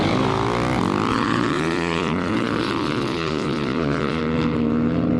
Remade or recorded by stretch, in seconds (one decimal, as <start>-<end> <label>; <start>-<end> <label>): 0.0-1.1 recorded; 1.1-4.2 remade; 4.2-5.2 recorded